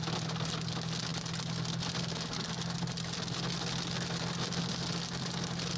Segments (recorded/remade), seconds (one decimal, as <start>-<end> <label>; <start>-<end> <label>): 0.0-5.8 recorded